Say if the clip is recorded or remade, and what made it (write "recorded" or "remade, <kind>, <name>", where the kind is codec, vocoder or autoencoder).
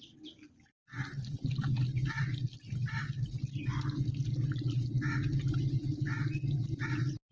recorded